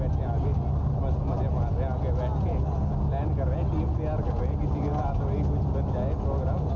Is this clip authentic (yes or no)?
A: yes